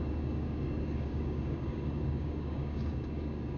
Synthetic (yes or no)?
yes